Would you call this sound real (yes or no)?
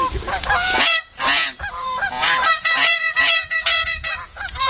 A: no